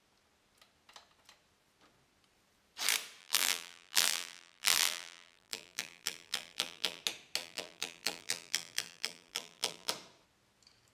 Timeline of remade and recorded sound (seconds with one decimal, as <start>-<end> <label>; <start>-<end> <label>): 0.0-3.2 recorded; 3.2-7.0 remade; 7.0-7.4 recorded; 7.4-9.9 remade; 9.9-10.9 recorded